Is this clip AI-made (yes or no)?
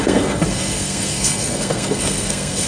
yes